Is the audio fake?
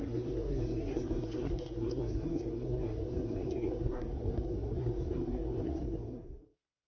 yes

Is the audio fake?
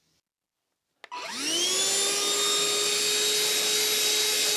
no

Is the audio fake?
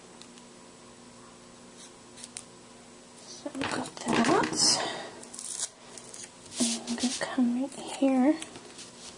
no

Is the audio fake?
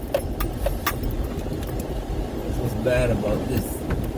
no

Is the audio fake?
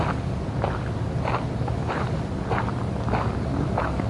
no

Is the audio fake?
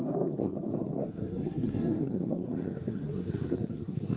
yes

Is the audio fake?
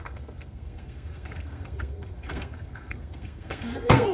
yes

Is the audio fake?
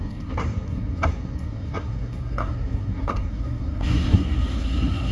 yes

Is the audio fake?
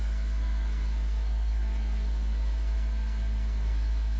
yes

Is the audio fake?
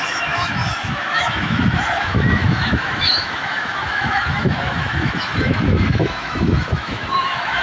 yes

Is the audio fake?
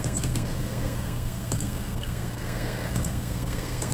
yes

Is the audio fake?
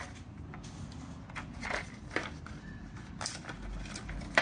no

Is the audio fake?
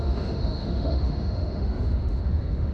yes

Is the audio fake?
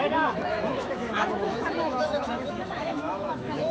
yes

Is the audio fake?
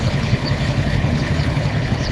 yes